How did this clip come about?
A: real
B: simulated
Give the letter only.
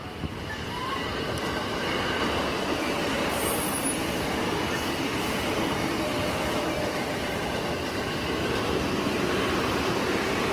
A